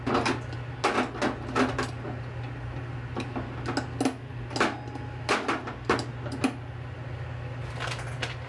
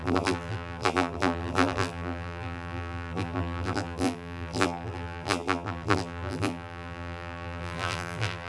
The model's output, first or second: second